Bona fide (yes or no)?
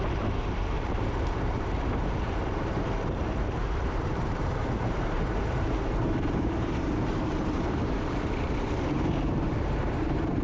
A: no